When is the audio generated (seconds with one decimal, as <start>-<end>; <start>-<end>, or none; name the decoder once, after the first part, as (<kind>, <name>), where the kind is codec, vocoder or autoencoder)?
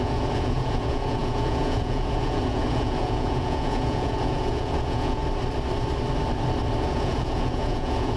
0.0-5.2 (vocoder, Vocos); 6.8-8.2